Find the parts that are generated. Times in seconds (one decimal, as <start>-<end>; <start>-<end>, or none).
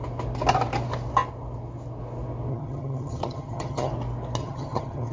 2.5-3.9; 4.4-5.1